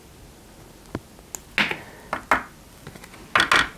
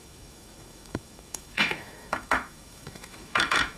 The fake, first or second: second